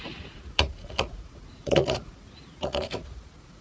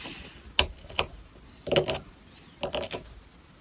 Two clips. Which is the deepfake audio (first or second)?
first